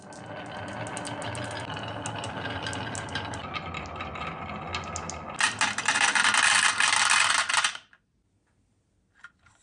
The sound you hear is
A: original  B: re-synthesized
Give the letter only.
A